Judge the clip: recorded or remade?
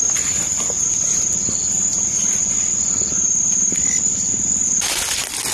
recorded